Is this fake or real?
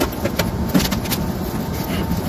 real